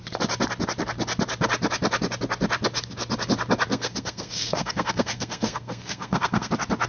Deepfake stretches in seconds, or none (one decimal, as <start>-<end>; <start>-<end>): 3.7-6.5